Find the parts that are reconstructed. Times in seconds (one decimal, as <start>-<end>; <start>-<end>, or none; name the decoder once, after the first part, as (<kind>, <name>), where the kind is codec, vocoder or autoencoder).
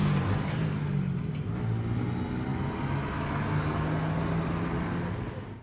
none